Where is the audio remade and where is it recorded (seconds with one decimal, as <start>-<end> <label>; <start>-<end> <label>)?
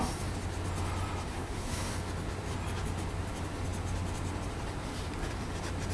0.0-1.3 recorded; 1.3-1.9 remade; 1.9-5.9 recorded